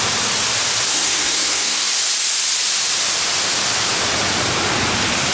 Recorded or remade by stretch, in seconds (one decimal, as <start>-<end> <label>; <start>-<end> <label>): 0.0-0.9 recorded; 0.9-1.9 remade; 1.9-5.3 recorded